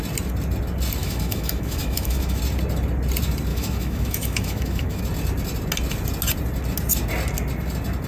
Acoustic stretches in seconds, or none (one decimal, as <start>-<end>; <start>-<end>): 0.0-1.0; 2.4-3.5; 5.0-8.1